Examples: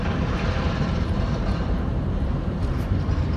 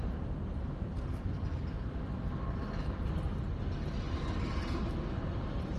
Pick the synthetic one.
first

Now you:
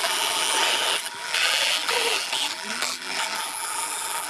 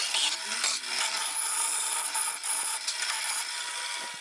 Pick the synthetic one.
first